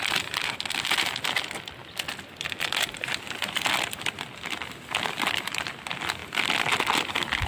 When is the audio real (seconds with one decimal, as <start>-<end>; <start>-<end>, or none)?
0.0-7.5